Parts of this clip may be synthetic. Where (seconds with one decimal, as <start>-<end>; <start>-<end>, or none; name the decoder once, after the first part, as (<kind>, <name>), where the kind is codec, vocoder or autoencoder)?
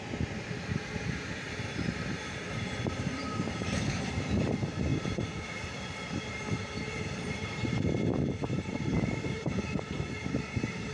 0.0-10.9 (vocoder, BigVGAN v2)